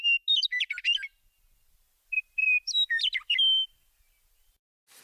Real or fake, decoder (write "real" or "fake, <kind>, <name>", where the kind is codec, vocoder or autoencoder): real